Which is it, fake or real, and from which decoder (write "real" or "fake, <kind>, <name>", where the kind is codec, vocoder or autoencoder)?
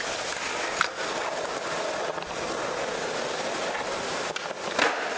real